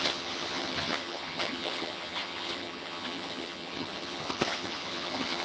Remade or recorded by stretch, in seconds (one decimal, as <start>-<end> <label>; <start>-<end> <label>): 0.0-5.4 remade